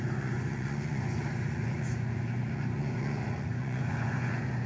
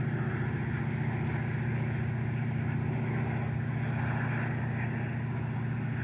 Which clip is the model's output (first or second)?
first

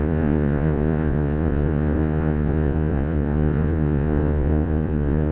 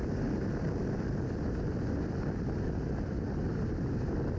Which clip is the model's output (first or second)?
first